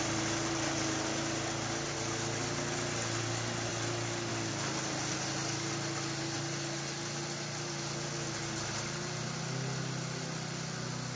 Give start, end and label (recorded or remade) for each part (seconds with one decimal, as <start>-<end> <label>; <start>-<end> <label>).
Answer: 0.0-11.2 recorded